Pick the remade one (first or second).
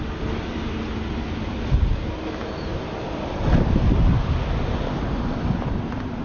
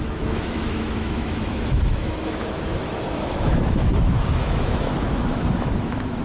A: second